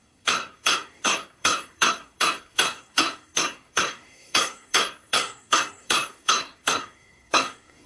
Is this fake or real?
fake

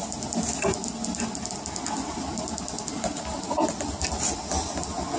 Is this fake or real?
real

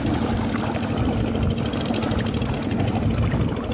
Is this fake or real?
real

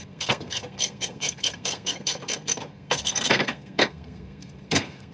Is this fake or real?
fake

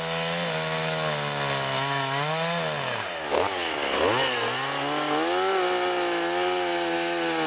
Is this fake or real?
real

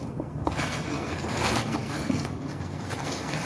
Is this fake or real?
fake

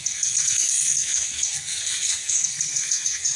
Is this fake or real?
fake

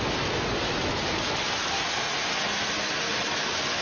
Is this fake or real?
real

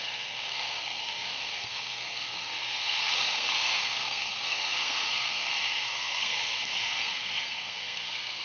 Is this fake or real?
fake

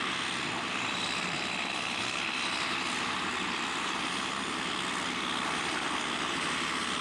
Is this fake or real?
real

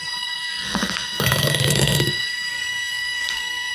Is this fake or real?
fake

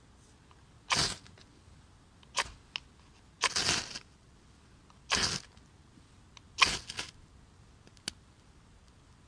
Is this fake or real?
real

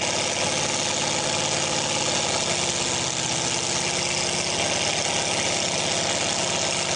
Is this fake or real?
real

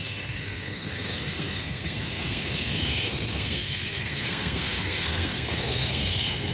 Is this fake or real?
fake